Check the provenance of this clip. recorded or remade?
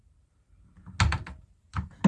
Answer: recorded